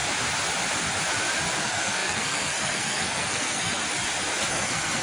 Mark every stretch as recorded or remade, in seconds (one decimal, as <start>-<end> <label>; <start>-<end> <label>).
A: 0.0-1.6 recorded; 1.6-3.8 remade; 3.8-4.5 recorded; 4.5-5.0 remade